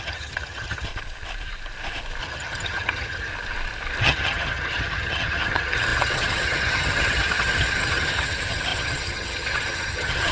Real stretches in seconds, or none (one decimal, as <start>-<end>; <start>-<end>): 0.9-2.2; 3.3-4.0